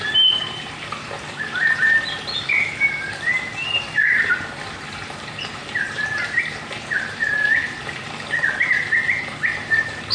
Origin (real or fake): fake